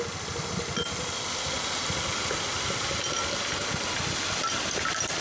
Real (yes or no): yes